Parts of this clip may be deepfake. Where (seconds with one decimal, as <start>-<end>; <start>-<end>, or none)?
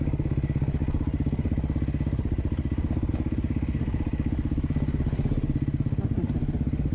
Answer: none